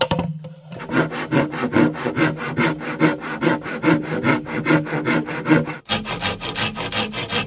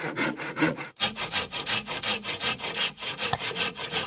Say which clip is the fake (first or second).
second